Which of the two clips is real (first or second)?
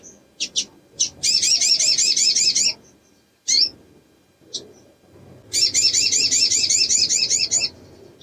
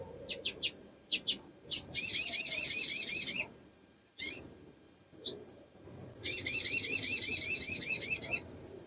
first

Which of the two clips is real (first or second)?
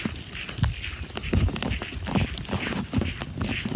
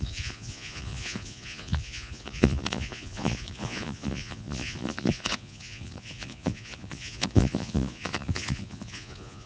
first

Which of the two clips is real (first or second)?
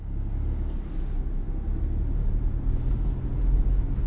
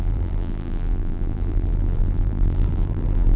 first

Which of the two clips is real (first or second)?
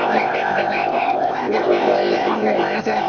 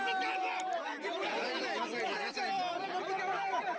second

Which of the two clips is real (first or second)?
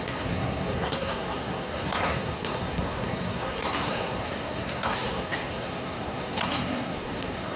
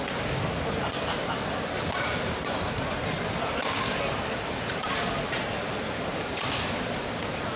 second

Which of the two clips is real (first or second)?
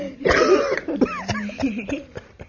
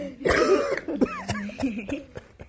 second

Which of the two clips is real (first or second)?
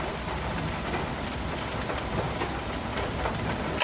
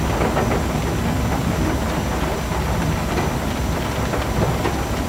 second